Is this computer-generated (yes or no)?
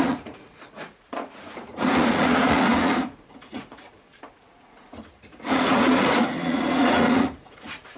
yes